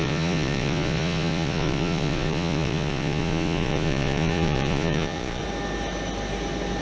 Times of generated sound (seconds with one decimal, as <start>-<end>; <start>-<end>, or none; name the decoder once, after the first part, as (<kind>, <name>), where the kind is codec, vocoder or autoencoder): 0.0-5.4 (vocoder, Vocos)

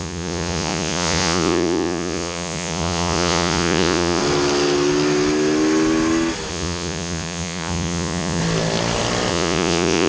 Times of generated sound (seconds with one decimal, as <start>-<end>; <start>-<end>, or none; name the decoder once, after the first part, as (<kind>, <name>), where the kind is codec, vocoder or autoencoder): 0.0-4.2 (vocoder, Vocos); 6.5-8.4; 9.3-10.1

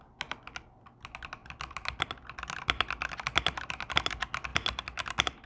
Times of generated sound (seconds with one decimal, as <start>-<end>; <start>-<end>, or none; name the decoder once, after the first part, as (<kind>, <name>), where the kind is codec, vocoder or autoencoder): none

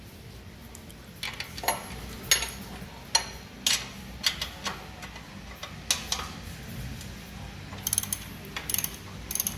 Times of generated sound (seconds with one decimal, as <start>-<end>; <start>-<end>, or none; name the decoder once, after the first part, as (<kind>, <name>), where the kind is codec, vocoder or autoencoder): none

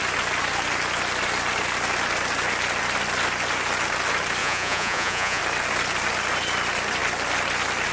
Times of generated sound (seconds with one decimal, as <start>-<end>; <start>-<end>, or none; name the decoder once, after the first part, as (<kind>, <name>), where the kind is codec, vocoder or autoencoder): 4.4-5.4 (vocoder, Vocos)

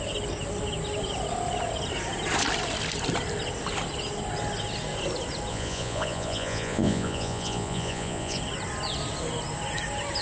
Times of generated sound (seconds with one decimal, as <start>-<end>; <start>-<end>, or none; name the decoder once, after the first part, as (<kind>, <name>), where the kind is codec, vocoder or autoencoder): 5.5-8.4 (vocoder, Vocos)

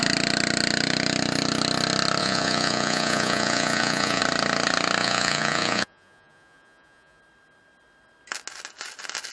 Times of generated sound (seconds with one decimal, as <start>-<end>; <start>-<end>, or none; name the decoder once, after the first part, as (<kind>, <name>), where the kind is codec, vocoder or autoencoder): 2.2-4.2 (vocoder, Vocos); 5.0-7.2